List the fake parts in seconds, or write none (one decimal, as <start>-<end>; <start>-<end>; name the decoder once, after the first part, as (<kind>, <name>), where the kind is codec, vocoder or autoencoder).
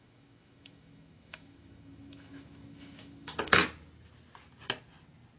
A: 0.0-3.6 (autoencoder, DAC-VAE)